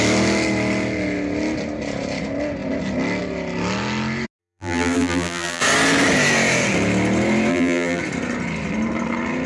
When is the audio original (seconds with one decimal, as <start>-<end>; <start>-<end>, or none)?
0.0-4.4; 5.6-7.5; 8.0-9.5